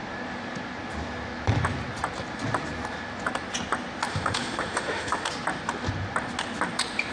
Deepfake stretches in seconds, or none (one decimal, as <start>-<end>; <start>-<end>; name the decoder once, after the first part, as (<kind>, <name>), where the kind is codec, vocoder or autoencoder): 4.1-5.3 (autoencoder, DAC-VAE)